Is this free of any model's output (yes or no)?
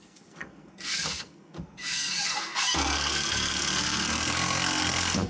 no